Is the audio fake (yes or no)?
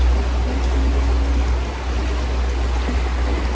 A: no